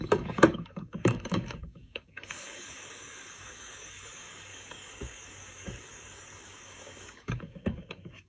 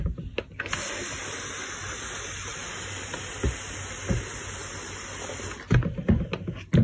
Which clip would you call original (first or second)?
second